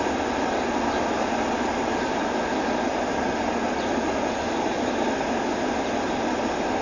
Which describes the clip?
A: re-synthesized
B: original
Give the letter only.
B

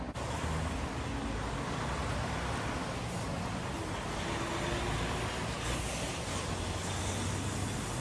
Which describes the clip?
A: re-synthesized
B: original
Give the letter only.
B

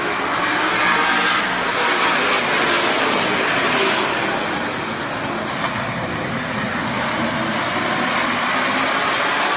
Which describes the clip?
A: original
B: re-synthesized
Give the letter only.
A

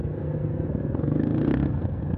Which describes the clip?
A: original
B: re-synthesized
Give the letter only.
B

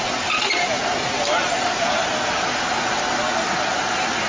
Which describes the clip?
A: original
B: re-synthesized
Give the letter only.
A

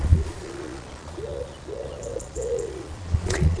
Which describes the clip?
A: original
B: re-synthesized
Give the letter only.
B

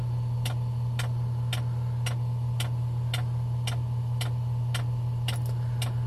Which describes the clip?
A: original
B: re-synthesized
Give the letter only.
A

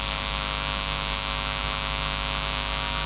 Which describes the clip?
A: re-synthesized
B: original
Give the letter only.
B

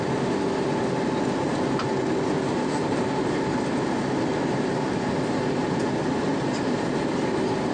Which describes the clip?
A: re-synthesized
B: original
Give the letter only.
B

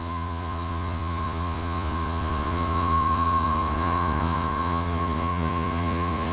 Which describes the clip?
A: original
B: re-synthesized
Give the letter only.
B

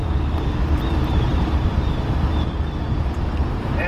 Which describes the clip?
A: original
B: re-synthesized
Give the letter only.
A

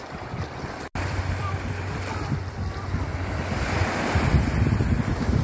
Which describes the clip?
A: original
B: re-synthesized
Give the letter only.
A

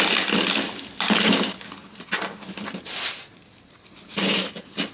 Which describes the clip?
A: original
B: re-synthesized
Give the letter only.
A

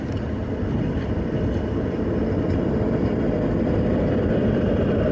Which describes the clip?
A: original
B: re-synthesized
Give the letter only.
B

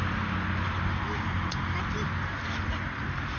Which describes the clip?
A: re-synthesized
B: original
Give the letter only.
B